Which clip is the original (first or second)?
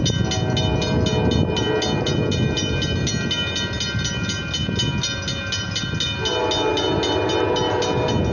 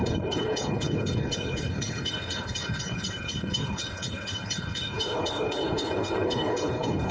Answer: first